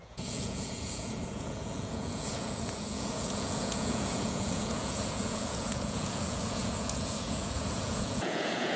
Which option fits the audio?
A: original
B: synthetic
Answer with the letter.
B